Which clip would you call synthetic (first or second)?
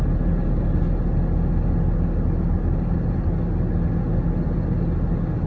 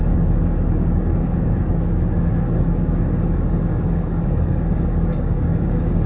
second